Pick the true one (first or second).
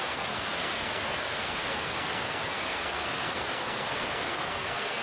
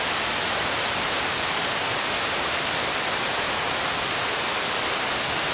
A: second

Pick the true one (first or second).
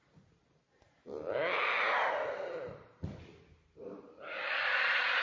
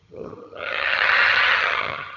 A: first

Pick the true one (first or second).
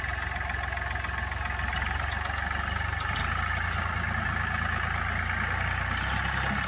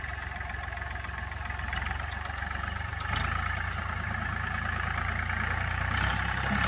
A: first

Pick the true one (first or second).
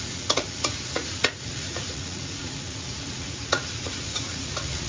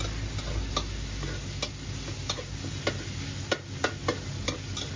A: second